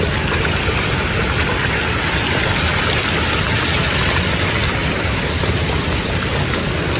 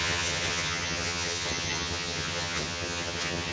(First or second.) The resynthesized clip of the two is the second